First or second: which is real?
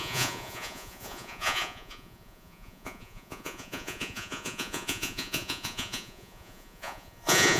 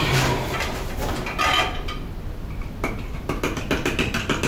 second